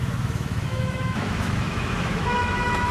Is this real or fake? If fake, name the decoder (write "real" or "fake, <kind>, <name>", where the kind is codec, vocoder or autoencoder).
fake, autoencoder, DAC-VAE